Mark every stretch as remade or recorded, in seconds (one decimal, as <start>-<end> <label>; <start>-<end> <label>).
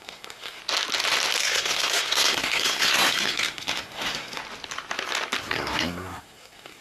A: 0.0-0.6 remade; 0.6-1.4 recorded; 1.4-4.4 remade; 4.4-5.4 recorded; 5.4-6.8 remade